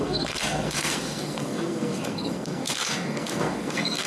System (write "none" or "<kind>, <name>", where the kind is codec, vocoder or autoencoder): codec, SNAC